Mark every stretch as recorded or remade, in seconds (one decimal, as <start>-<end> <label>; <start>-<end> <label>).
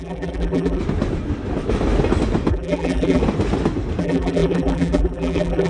0.0-0.8 remade; 0.8-2.5 recorded; 2.5-3.2 remade; 3.2-4.0 recorded; 4.0-5.7 remade